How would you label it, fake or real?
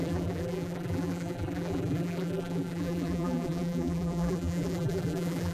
fake